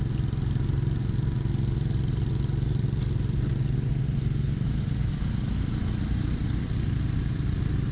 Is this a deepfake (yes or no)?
no